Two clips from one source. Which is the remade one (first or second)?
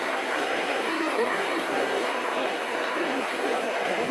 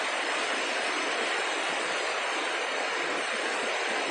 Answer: first